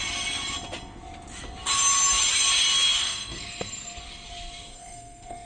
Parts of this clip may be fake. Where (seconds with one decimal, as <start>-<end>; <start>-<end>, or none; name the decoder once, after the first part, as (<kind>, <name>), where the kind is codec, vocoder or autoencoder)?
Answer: 3.0-4.0 (codec, SNAC); 4.7-5.5